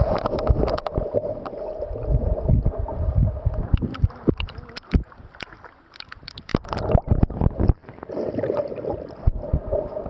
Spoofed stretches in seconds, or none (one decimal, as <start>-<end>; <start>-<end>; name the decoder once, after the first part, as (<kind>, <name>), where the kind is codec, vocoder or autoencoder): 2.9-3.7 (vocoder, BigVGAN v2)